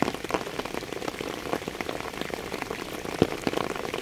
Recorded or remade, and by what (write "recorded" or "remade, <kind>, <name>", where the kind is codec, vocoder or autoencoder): remade, vocoder, BigVGAN v2